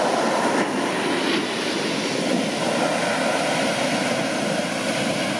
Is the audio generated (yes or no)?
no